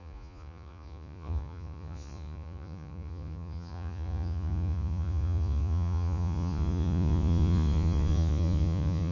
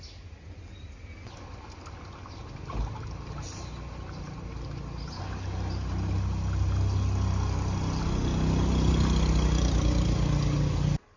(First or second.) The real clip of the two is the second